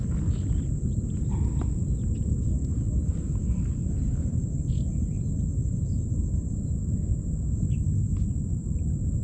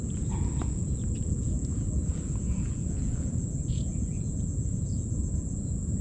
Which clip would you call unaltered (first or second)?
first